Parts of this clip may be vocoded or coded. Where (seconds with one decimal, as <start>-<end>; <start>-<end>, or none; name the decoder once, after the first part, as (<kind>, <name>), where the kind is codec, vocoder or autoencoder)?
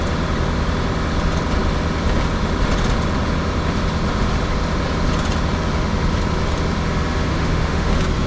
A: 7.3-7.9 (autoencoder, DAC-VAE)